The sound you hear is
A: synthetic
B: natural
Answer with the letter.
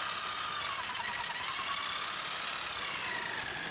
B